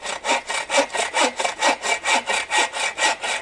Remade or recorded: recorded